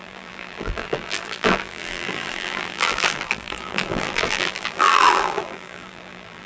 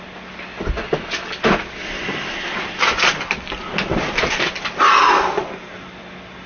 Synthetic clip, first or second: first